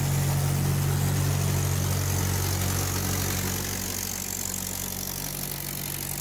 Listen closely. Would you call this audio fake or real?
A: real